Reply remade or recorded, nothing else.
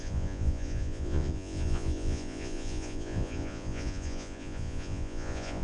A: remade